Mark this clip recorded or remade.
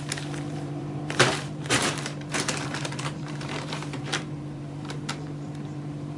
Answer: remade